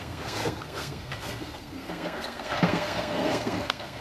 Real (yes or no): no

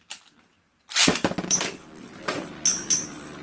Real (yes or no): yes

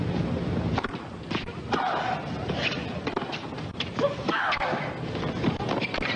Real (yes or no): yes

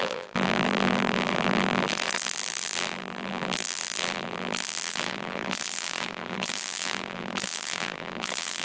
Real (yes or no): no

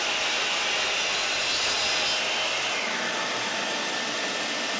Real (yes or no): yes